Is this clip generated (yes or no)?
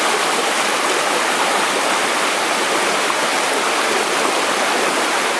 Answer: no